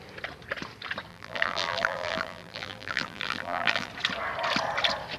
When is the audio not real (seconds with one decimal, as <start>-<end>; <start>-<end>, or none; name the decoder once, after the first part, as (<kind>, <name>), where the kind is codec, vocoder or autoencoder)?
1.1-3.9 (vocoder, BigVGAN v2)

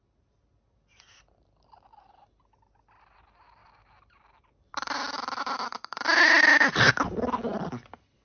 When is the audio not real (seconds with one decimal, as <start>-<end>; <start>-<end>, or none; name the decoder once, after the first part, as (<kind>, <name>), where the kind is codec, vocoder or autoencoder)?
3.6-6.9 (vocoder, BigVGAN v2)